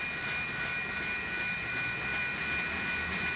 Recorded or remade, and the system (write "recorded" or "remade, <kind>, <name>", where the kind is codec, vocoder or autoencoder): recorded